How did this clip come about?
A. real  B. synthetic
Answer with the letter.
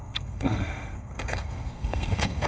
B